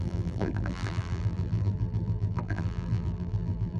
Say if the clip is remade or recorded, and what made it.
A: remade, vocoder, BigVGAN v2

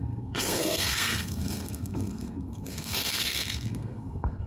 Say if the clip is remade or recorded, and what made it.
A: remade, codec, SNAC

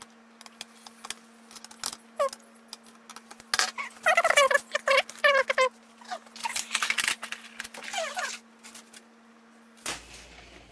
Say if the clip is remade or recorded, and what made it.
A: recorded